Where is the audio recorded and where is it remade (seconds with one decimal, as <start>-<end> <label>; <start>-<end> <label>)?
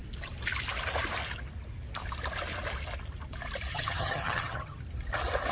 0.0-3.7 recorded; 3.7-4.8 remade; 4.8-5.5 recorded